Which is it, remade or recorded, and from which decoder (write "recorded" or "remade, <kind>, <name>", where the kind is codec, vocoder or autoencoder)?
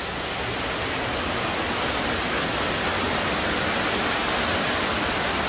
recorded